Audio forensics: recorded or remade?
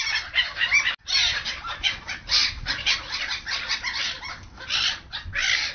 recorded